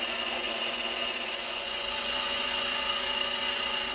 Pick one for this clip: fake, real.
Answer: fake